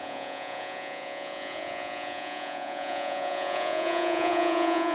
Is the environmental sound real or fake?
fake